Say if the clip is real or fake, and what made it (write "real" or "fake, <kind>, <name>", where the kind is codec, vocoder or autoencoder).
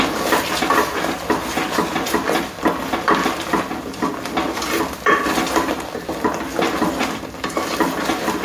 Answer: real